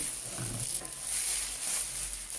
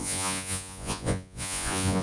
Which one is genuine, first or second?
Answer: first